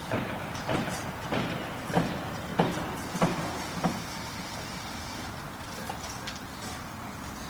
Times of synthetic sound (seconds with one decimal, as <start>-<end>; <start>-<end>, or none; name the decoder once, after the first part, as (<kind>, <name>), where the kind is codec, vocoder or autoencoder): none